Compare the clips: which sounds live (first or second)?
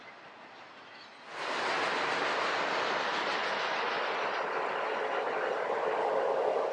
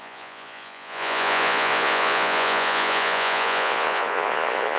first